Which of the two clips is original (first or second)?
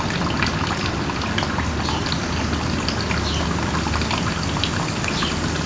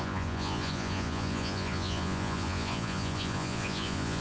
first